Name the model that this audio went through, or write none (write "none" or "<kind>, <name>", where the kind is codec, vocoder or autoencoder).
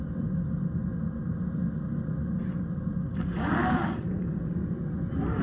none